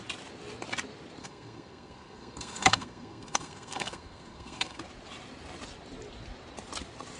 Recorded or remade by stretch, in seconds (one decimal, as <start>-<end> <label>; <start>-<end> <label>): 0.0-1.2 recorded; 1.2-4.8 remade; 4.8-7.2 recorded